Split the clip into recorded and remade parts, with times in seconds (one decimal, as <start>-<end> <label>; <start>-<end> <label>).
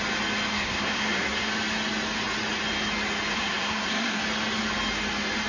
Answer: 0.0-0.5 recorded; 0.5-1.5 remade; 1.5-3.3 recorded; 3.3-4.2 remade; 4.2-5.5 recorded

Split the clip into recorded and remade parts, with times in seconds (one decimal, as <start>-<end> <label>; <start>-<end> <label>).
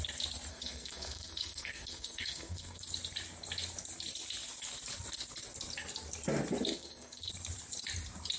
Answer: 0.0-0.5 recorded; 0.5-2.8 remade; 2.8-6.7 recorded; 6.7-7.3 remade; 7.3-8.4 recorded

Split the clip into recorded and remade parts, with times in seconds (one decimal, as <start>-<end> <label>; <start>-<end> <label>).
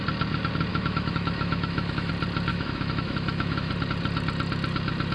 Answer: 0.0-0.7 recorded; 0.7-2.1 remade; 2.1-2.5 recorded; 2.5-3.7 remade; 3.7-5.1 recorded